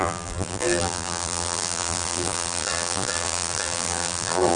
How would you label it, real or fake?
fake